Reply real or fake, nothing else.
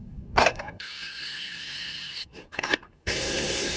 fake